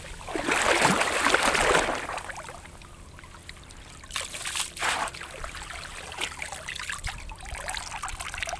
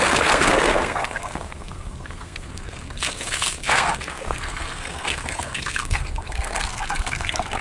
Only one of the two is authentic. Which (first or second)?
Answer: first